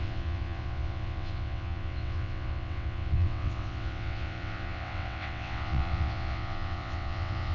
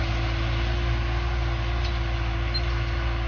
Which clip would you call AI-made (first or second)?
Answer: first